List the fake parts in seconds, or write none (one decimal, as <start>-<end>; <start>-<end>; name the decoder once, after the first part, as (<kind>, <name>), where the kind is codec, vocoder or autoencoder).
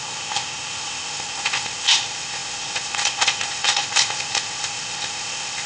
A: 0.0-5.7 (codec, ZipCodec)